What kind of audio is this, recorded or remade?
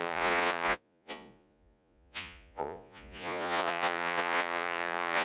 remade